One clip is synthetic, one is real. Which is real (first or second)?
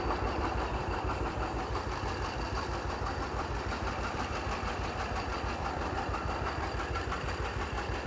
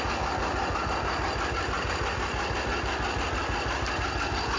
second